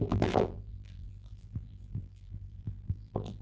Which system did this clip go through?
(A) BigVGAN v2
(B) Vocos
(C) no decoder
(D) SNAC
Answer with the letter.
A